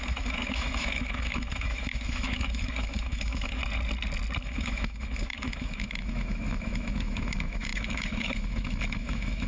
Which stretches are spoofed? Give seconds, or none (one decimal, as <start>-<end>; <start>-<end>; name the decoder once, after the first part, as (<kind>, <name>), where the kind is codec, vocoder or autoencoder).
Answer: 0.0-3.6 (autoencoder, DAC-VAE); 4.4-9.5